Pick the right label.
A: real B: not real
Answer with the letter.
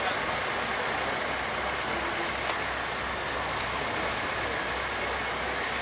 A